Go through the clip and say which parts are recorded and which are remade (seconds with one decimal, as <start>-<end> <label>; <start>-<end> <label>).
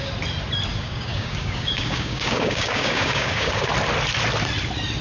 0.0-0.7 recorded; 0.7-3.7 remade; 3.7-5.0 recorded